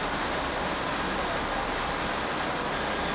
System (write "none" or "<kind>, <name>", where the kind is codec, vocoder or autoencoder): none